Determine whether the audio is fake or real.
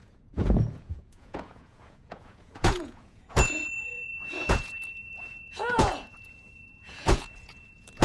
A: fake